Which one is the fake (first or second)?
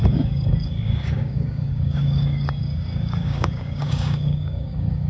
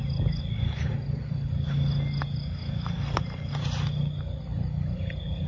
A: first